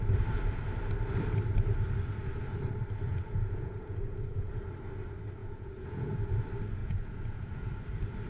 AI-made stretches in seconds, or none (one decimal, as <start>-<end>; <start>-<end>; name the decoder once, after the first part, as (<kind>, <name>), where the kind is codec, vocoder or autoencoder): 3.1-4.6 (vocoder, Vocos); 5.4-6.2; 6.8-7.7